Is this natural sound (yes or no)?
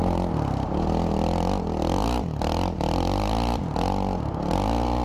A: yes